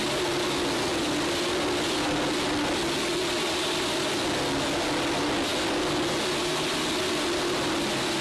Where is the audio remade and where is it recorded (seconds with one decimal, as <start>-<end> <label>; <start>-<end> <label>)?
0.0-8.2 recorded